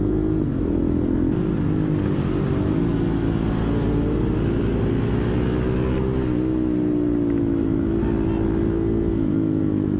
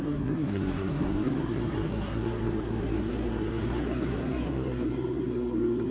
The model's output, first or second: second